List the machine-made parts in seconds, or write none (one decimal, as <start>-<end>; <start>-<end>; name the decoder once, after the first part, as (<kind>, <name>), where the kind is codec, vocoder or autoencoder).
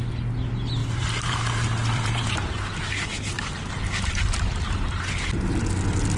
0.8-2.4 (vocoder, BigVGAN v2); 3.1-5.0